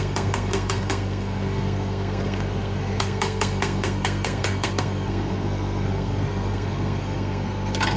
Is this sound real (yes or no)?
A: no